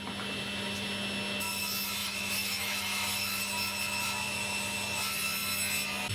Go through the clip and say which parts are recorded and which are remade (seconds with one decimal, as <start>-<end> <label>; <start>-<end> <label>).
0.0-2.0 recorded; 2.0-3.4 remade; 3.4-6.1 recorded